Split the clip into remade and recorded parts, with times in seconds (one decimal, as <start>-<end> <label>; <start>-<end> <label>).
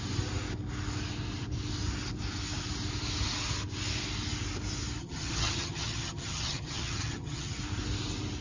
0.0-5.0 recorded; 5.0-7.6 remade; 7.6-8.4 recorded